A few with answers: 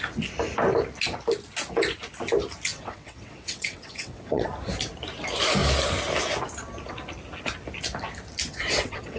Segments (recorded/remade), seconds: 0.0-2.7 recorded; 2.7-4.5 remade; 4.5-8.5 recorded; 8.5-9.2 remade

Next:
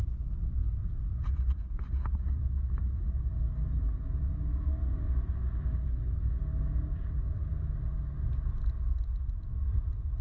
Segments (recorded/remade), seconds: 0.0-10.2 recorded

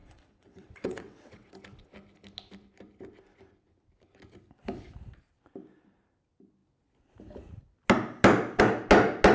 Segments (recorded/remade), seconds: 0.0-1.5 remade; 1.5-9.3 recorded

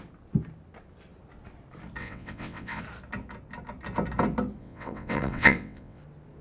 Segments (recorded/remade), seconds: 0.0-2.0 recorded; 2.0-2.8 remade; 2.8-4.6 recorded; 4.6-6.0 remade; 6.0-6.4 recorded

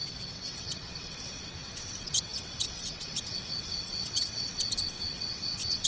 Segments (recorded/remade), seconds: 0.0-5.9 remade